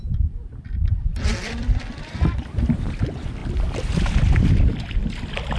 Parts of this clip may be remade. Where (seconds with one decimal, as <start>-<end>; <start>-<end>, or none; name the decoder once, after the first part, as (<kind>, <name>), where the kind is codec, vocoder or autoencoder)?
1.1-3.0 (vocoder, BigVGAN v2)